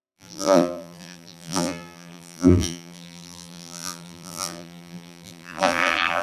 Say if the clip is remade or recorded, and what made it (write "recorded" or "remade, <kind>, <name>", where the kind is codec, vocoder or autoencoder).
remade, vocoder, BigVGAN v2